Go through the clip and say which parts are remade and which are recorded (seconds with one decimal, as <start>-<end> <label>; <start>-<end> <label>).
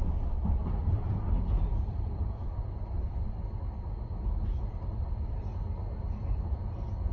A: 0.0-7.1 recorded